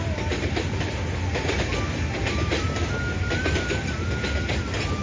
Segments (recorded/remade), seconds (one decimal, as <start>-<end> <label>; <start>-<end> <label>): 0.0-5.0 recorded